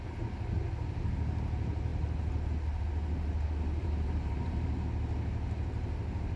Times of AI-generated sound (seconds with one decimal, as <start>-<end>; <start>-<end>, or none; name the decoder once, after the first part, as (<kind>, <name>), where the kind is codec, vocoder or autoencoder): 3.8-4.7 (vocoder, BigVGAN v2)